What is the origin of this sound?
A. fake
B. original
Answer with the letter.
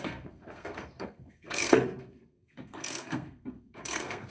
A